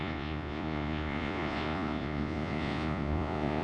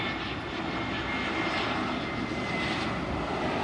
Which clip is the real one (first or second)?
second